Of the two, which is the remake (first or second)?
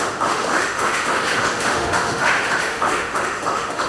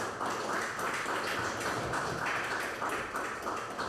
first